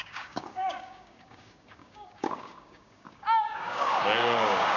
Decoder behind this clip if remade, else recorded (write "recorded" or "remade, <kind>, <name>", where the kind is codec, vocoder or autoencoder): remade, codec, DAC